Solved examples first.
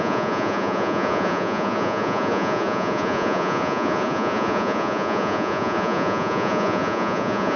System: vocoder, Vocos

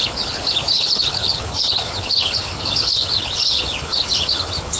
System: codec, HILCodec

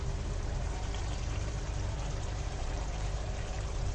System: vocoder, BigVGAN v2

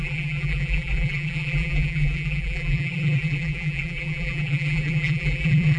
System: vocoder, BigVGAN v2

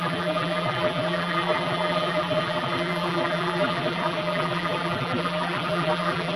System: vocoder, BigVGAN v2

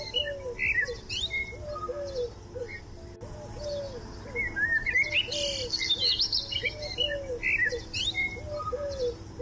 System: none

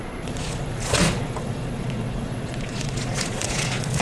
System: vocoder, Vocos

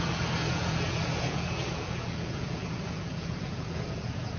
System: vocoder, Vocos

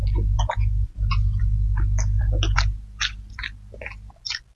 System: none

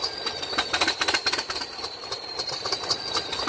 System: none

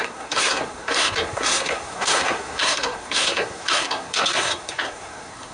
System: codec, SNAC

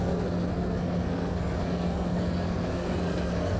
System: codec, SNAC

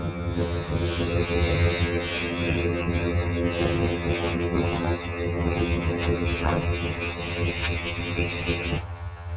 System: vocoder, HiFi-GAN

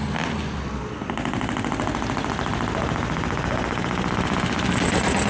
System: none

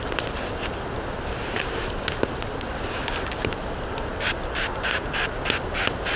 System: none